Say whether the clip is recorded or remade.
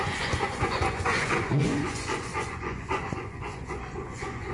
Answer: remade